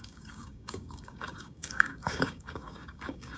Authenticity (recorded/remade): remade